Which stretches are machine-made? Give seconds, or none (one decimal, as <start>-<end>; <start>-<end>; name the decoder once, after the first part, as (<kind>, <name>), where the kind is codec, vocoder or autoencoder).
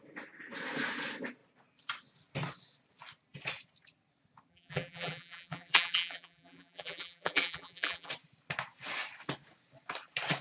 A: 4.5-8.1 (vocoder, BigVGAN v2)